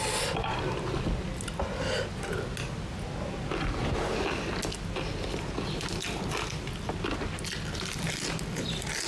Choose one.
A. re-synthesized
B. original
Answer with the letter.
B